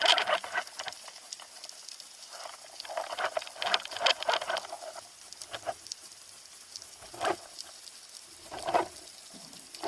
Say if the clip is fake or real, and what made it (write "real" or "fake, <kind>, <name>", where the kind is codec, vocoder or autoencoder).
fake, vocoder, BigVGAN v2